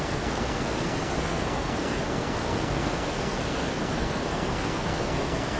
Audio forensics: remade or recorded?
remade